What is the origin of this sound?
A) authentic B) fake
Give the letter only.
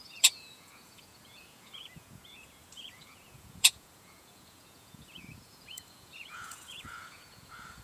B